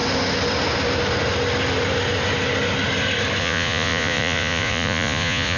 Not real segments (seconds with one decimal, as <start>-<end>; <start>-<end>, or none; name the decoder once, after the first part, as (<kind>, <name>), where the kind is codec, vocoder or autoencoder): 3.4-5.6 (vocoder, Vocos)